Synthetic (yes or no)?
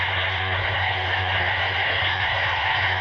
yes